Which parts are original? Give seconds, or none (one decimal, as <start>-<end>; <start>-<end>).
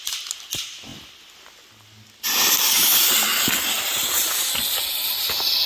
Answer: 0.0-5.7